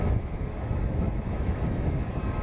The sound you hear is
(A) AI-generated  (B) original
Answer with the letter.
A